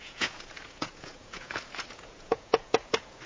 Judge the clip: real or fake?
fake